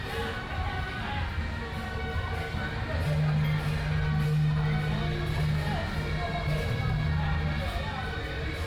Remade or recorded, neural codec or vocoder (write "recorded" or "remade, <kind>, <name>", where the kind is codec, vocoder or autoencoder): recorded